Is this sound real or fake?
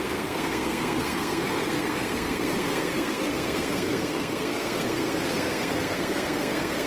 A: fake